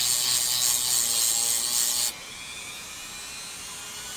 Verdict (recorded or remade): recorded